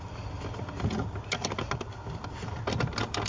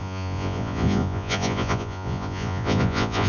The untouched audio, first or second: first